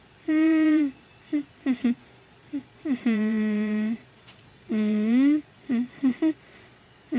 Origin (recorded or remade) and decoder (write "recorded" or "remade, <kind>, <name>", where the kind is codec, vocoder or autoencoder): remade, vocoder, Vocos